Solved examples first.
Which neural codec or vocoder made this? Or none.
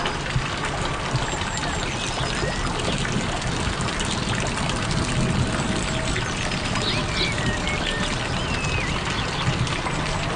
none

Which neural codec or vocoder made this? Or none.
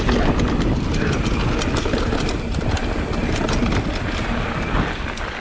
none